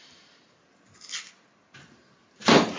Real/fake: real